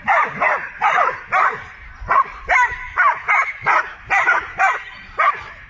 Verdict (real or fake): real